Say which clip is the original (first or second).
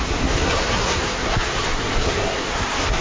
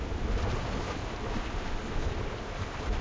second